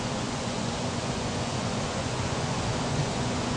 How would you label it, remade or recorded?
remade